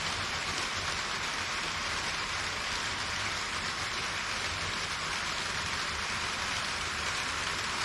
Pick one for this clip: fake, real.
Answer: fake